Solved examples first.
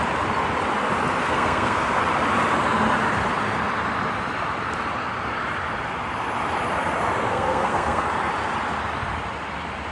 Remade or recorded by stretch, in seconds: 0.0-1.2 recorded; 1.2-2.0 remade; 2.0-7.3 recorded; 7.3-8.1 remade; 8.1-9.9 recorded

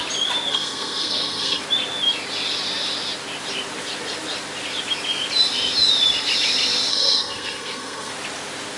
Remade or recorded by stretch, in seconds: 0.0-0.5 recorded; 0.5-1.6 remade; 1.6-6.9 recorded; 6.9-8.1 remade; 8.1-8.8 recorded

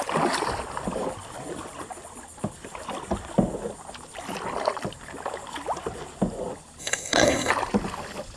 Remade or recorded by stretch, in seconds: 0.0-6.8 recorded; 6.8-7.5 remade; 7.5-8.4 recorded

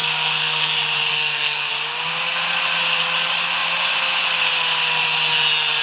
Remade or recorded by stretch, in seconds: 0.0-0.7 remade; 0.7-1.1 recorded; 1.1-1.7 remade; 1.7-5.8 recorded

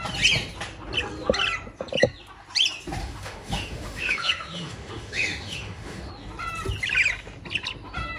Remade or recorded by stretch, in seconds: 0.0-3.0 recorded; 3.0-6.1 remade; 6.1-8.2 recorded